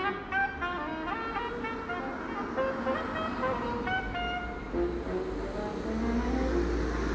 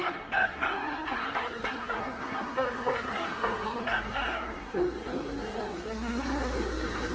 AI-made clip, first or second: second